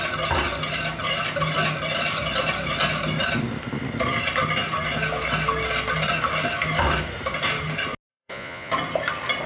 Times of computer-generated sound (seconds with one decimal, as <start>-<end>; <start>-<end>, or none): 8.1-8.7